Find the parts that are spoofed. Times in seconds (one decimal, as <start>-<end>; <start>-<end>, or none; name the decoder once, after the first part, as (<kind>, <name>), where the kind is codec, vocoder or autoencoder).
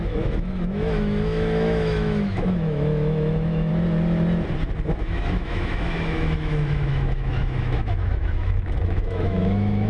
0.0-3.7 (autoencoder, DAC-VAE); 4.9-9.9